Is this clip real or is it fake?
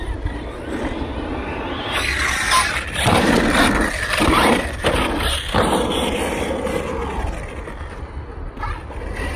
real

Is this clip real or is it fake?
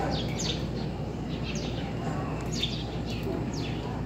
real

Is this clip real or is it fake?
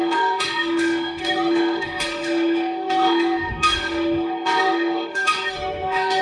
fake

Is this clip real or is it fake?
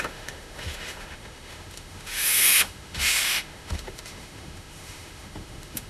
fake